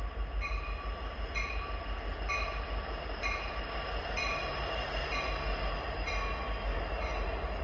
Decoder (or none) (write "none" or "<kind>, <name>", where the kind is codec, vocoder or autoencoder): none